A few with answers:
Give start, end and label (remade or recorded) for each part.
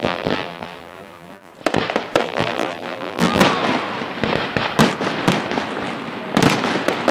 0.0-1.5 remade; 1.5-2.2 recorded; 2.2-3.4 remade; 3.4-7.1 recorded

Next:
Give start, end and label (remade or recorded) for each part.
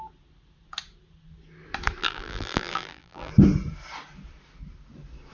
0.0-2.0 recorded; 2.0-3.3 remade; 3.3-5.3 recorded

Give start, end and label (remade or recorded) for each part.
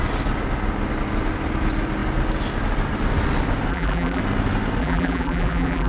0.0-3.7 recorded; 3.7-4.2 remade; 4.2-4.8 recorded; 4.8-5.9 remade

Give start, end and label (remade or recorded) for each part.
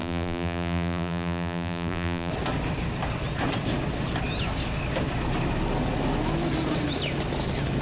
0.0-2.3 remade; 2.3-7.8 recorded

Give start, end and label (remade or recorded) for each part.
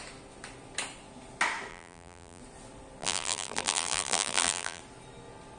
0.0-1.7 recorded; 1.7-2.4 remade; 2.4-3.0 recorded; 3.0-4.8 remade; 4.8-5.6 recorded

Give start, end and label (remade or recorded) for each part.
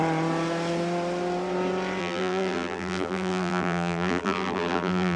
0.0-2.0 recorded; 2.0-5.2 remade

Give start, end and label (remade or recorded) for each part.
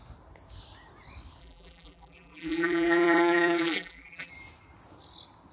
0.0-1.4 recorded; 1.4-4.3 remade; 4.3-5.5 recorded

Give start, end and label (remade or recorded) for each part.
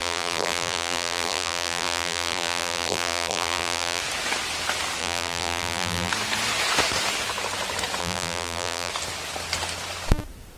0.0-4.0 remade; 4.0-5.0 recorded; 5.0-6.1 remade; 6.1-8.0 recorded; 8.0-8.9 remade; 8.9-10.6 recorded